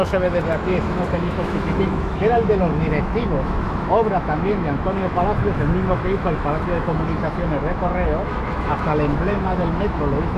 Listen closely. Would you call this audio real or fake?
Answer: fake